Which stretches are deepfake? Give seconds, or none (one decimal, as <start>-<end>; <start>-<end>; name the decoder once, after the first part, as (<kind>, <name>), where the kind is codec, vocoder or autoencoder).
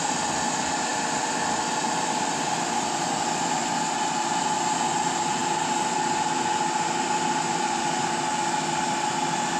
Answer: 0.9-2.4 (vocoder, BigVGAN v2)